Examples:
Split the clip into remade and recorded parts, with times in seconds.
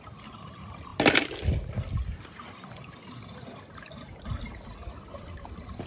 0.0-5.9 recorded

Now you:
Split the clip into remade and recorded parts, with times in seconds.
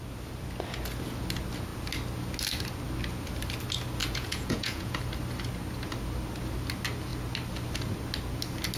0.0-4.0 recorded; 4.0-5.0 remade; 5.0-8.8 recorded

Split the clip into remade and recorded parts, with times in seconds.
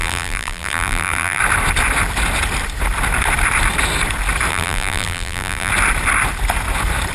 0.0-1.4 remade; 1.4-4.5 recorded; 4.5-5.7 remade; 5.7-7.1 recorded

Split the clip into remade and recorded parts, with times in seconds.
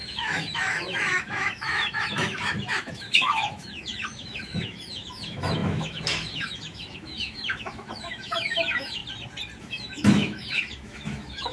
0.0-9.0 remade; 9.0-9.6 recorded; 9.6-11.5 remade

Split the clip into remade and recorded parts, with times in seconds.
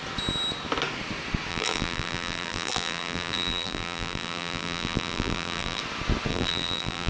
0.0-1.5 recorded; 1.5-5.8 remade; 5.8-6.3 recorded; 6.3-7.1 remade